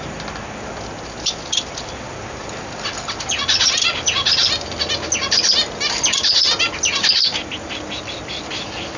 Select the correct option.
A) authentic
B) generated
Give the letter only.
A